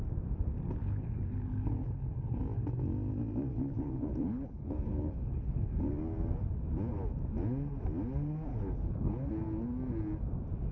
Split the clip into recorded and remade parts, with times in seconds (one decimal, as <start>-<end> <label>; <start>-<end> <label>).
0.0-0.8 recorded; 0.8-2.4 remade; 2.4-3.5 recorded; 3.5-5.8 remade; 5.8-8.5 recorded; 8.5-9.3 remade; 9.3-10.7 recorded